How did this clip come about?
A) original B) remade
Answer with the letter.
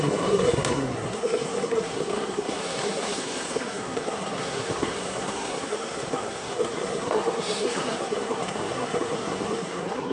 B